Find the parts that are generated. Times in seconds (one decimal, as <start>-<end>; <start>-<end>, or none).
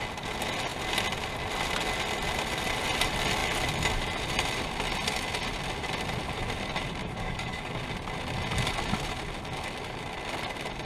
7.0-7.7